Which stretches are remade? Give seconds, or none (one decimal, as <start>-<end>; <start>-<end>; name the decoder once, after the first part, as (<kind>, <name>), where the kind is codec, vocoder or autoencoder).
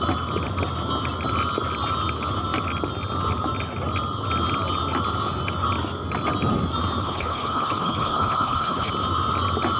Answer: 7.0-8.9 (codec, HILCodec)